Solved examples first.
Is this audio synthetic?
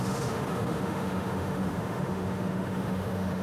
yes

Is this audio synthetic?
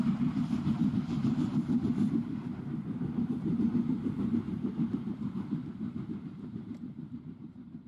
yes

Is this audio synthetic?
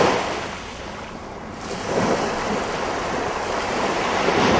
no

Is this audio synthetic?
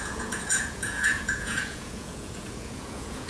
yes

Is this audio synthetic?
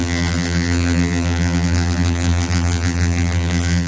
yes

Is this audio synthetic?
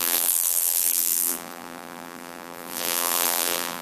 yes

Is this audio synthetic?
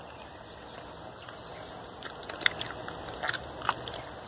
yes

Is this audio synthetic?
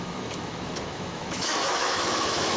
yes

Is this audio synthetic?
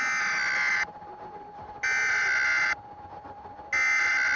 no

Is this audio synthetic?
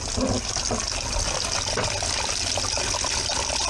no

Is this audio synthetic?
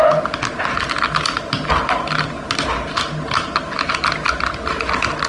no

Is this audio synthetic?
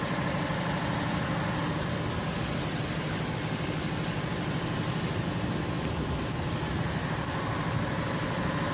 no